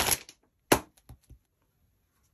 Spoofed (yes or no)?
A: no